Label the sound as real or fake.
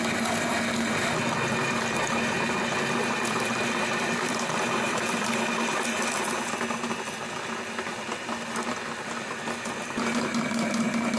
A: real